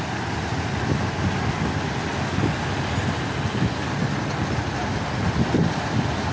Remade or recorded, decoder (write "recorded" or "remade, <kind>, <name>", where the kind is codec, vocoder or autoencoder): recorded